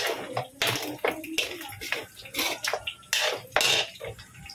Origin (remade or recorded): recorded